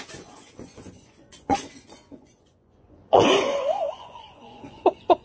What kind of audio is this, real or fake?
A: fake